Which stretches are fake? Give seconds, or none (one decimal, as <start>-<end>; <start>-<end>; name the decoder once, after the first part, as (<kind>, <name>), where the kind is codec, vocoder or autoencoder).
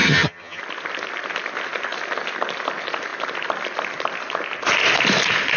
0.0-0.6 (vocoder, HiFi-GAN)